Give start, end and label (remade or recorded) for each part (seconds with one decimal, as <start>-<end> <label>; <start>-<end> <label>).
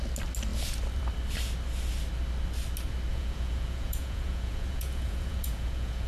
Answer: 0.0-3.1 recorded; 3.1-6.1 remade